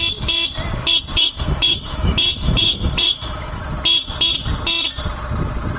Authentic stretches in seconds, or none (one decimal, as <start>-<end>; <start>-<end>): 0.0-1.2; 3.6-5.8